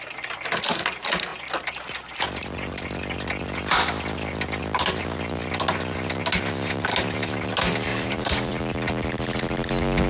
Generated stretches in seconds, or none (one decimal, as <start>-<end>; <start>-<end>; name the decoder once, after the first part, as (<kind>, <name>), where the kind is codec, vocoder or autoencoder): 7.9-8.5 (vocoder, BigVGAN v2)